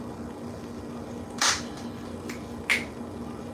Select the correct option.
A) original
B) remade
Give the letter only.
A